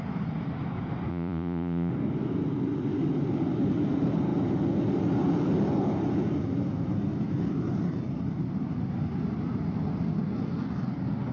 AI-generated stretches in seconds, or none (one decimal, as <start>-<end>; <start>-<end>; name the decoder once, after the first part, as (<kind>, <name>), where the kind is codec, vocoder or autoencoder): 1.1-1.9 (vocoder, Vocos)